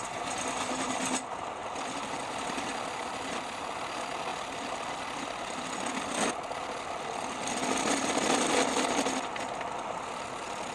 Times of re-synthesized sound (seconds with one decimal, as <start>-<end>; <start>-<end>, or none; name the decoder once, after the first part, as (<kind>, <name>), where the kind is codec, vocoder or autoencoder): 1.6-3.6 (vocoder, BigVGAN v2); 4.3-5.2